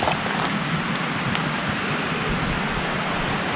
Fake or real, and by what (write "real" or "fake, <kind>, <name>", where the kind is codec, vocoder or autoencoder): real